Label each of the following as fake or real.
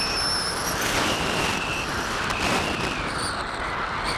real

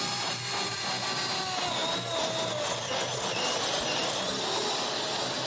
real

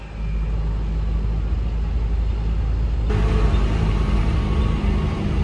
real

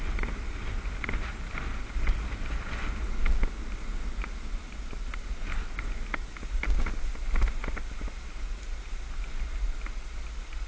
real